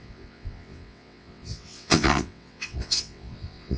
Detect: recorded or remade remade